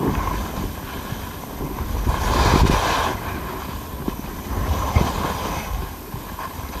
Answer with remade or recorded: recorded